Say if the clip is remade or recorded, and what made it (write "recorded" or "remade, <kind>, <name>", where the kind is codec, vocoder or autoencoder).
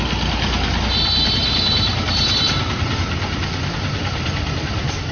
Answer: recorded